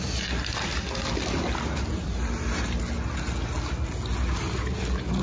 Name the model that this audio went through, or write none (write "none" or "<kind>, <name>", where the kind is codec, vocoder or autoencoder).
none